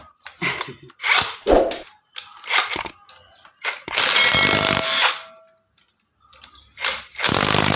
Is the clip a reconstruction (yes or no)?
no